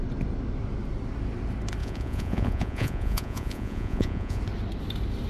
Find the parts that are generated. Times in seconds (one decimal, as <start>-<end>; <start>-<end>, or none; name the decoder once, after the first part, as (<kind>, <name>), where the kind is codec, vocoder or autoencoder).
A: 1.8-4.4 (vocoder, Vocos)